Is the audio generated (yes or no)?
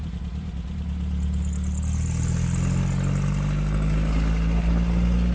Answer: no